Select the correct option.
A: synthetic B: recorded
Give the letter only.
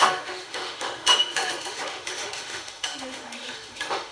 A